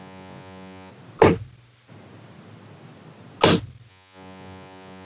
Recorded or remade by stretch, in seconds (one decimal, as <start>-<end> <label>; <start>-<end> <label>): 0.0-0.9 remade; 0.9-3.9 recorded; 3.9-5.0 remade